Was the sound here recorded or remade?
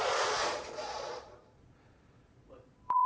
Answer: remade